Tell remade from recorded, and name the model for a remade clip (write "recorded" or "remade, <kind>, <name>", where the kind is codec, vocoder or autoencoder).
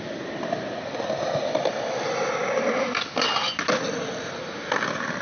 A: recorded